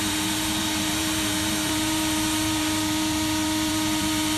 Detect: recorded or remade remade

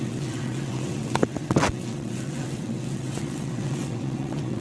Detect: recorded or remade remade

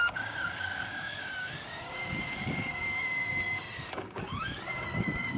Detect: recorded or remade remade